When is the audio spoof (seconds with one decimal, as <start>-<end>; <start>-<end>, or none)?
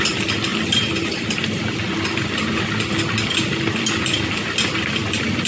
none